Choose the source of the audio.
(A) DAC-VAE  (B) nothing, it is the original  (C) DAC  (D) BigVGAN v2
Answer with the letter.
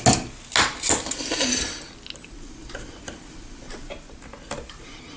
B